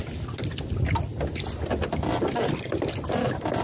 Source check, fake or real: real